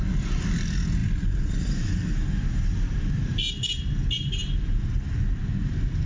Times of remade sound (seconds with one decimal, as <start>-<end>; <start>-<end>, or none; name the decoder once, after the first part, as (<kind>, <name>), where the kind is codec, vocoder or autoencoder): none